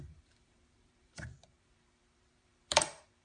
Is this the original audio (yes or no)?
no